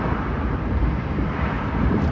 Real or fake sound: fake